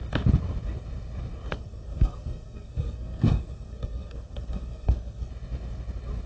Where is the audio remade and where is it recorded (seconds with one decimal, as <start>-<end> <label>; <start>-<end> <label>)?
0.0-1.5 recorded; 1.5-5.3 remade; 5.3-6.3 recorded